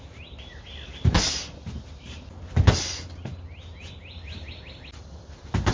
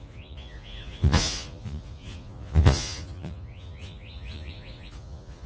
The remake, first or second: second